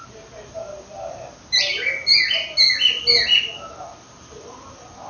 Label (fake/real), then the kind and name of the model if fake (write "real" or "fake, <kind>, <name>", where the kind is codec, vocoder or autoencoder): real